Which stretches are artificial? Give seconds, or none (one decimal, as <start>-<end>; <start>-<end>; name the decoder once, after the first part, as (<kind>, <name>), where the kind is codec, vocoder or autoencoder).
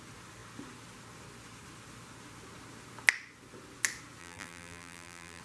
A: 4.2-5.4 (vocoder, BigVGAN v2)